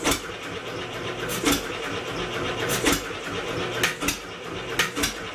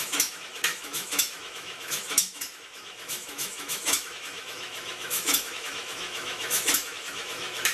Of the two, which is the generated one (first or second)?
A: second